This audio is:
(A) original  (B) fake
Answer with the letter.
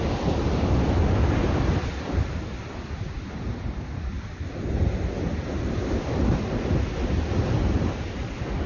A